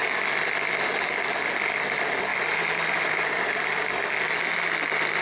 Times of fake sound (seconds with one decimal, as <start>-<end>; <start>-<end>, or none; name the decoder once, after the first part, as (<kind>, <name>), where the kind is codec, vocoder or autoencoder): 2.3-3.6 (vocoder, BigVGAN v2)